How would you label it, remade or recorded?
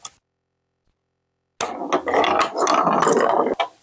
recorded